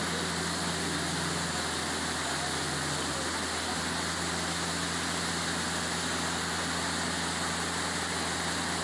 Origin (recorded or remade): recorded